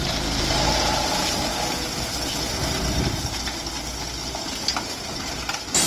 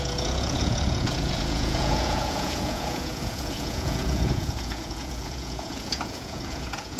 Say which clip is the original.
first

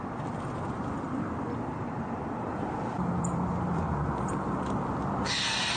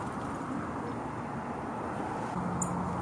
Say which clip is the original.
second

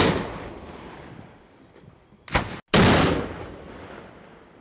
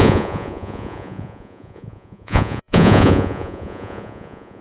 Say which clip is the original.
first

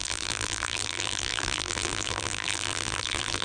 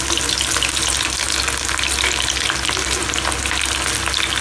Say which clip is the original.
second